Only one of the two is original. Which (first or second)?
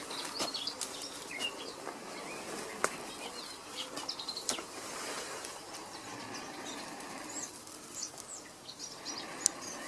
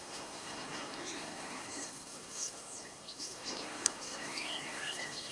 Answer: first